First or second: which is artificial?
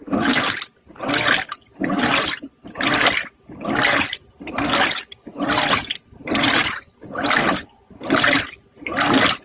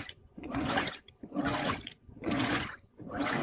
second